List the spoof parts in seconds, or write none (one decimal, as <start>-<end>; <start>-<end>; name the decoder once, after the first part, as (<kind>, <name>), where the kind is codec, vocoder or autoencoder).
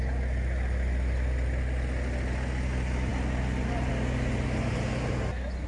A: none